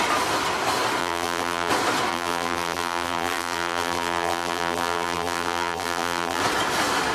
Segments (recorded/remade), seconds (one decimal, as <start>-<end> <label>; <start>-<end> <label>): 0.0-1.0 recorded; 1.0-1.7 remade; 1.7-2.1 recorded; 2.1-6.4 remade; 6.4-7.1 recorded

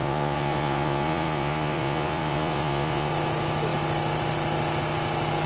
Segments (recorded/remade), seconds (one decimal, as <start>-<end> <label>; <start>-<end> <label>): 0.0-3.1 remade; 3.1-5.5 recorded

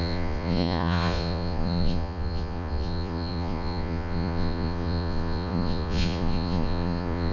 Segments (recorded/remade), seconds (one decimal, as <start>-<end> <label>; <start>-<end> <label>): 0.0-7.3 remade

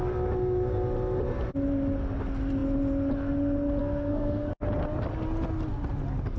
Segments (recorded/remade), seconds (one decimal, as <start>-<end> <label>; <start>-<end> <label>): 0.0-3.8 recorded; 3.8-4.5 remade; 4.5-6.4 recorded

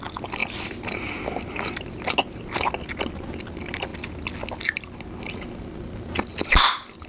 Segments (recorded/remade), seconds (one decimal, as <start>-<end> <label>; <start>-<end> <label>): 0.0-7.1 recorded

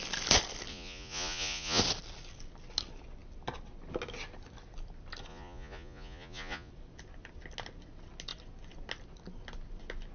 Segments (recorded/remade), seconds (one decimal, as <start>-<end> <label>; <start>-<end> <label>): 0.0-0.7 recorded; 0.7-1.8 remade; 1.8-5.3 recorded; 5.3-6.7 remade; 6.7-10.1 recorded